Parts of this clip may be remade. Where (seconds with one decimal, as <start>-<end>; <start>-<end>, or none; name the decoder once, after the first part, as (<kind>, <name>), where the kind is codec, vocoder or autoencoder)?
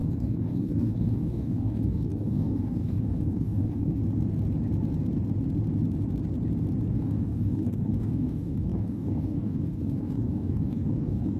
0.0-4.0 (codec, DAC); 6.9-11.4